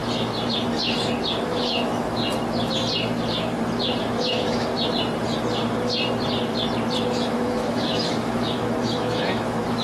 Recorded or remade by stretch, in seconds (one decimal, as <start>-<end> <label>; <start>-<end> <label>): 0.0-1.4 recorded; 1.4-2.2 remade; 2.2-4.1 recorded; 4.1-4.7 remade; 4.7-7.1 recorded; 7.1-9.8 remade